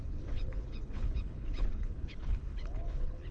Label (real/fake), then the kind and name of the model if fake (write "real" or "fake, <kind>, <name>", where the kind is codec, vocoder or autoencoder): fake, codec, HILCodec